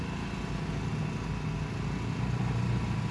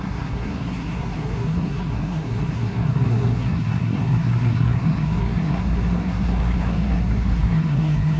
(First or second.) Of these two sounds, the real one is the first